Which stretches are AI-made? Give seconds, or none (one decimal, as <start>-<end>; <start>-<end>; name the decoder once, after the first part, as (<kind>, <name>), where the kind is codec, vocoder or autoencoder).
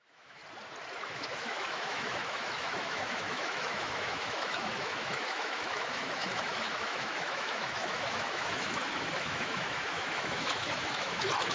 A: 0.0-0.4 (autoencoder, DAC-VAE); 1.1-11.5